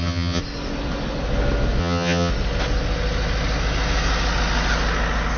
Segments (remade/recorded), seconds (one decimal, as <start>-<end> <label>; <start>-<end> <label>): 0.0-0.4 remade; 0.4-1.8 recorded; 1.8-2.3 remade; 2.3-5.4 recorded